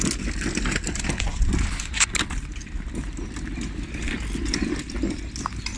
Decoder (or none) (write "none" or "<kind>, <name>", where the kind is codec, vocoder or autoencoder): none